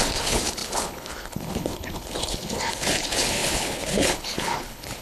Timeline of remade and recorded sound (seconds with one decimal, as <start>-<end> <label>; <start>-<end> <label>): 0.0-5.0 remade